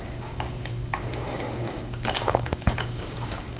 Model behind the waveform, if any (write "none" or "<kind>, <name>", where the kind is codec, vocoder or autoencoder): codec, DAC